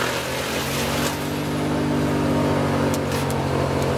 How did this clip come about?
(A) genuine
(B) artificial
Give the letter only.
A